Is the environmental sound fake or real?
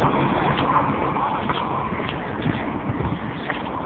real